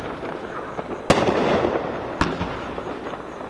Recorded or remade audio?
recorded